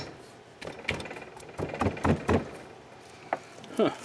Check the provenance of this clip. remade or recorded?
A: recorded